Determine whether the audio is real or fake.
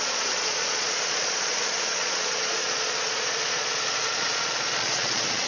fake